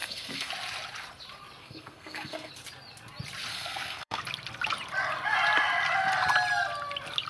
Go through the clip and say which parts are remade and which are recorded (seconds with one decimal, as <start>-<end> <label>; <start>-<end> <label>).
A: 0.0-0.5 remade; 0.5-1.6 recorded; 1.6-2.5 remade; 2.5-3.5 recorded; 3.5-4.2 remade; 4.2-7.3 recorded